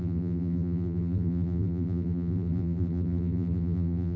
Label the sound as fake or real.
fake